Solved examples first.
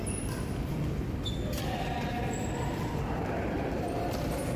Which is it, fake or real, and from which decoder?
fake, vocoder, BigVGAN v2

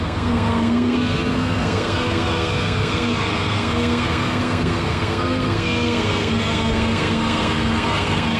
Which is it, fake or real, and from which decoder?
fake, codec, SNAC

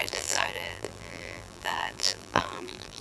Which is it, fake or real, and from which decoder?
fake, vocoder, BigVGAN v2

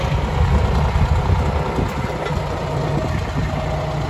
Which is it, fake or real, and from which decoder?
real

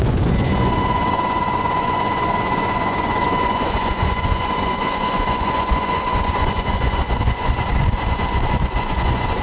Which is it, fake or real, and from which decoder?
fake, vocoder, Vocos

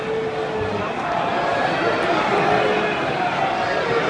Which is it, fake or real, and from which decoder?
real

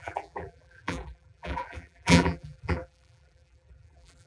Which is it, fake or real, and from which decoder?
fake, vocoder, BigVGAN v2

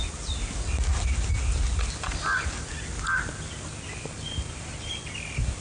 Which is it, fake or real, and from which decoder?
real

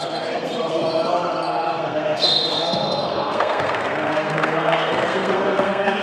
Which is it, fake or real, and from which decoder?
fake, codec, SNAC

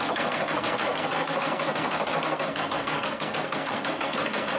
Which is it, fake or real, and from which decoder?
fake, codec, SNAC